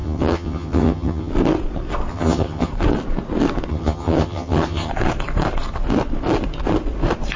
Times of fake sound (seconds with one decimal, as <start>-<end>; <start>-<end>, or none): 0.0-1.3; 2.1-2.7; 3.7-4.9